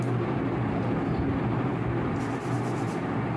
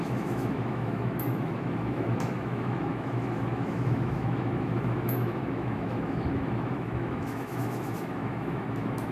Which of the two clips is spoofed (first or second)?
second